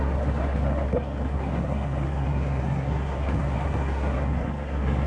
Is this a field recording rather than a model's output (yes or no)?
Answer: no